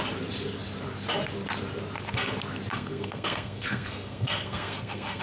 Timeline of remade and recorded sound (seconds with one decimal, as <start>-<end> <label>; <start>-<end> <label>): 0.0-2.7 recorded; 2.7-5.2 remade